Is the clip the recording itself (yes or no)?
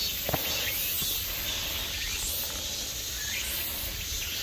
yes